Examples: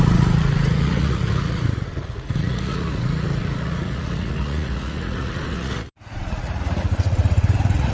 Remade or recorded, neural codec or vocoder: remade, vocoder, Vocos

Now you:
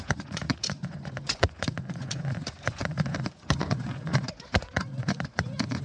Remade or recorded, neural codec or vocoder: remade, vocoder, Vocos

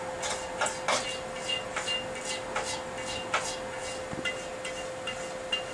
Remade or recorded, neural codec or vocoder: recorded